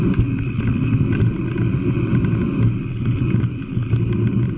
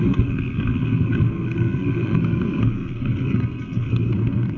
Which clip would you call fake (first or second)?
second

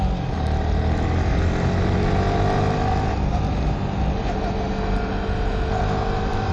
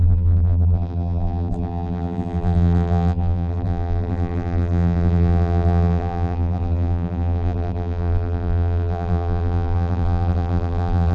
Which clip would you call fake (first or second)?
second